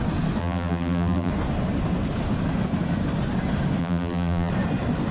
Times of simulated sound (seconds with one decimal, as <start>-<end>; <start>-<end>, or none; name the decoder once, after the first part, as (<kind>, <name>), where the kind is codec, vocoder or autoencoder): 0.4-1.3 (vocoder, BigVGAN v2); 3.8-4.5